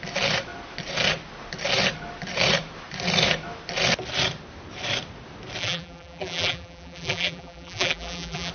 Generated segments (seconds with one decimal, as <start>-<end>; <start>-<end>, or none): 5.6-8.5